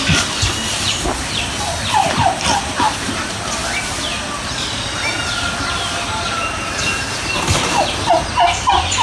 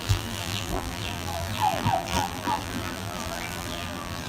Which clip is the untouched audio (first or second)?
first